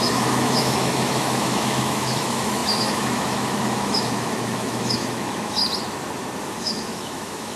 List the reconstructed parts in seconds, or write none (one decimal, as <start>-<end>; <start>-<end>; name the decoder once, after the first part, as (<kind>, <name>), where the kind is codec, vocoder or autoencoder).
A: 0.0-5.6 (autoencoder, DAC-VAE); 6.4-7.6